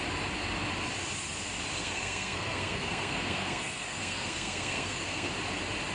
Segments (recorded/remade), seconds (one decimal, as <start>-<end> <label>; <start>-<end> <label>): 0.0-1.8 recorded; 1.8-5.3 remade; 5.3-5.9 recorded